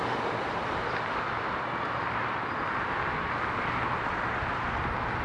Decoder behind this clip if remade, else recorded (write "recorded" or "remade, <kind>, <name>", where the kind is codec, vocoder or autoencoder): recorded